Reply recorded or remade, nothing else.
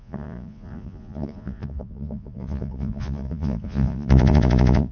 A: remade